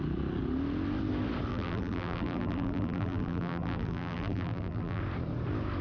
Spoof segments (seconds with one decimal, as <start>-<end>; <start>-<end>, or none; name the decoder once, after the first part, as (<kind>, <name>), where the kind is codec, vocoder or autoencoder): 1.5-5.0 (vocoder, BigVGAN v2)